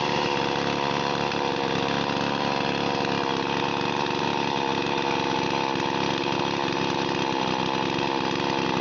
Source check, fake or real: real